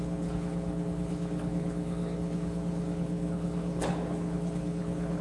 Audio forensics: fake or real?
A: fake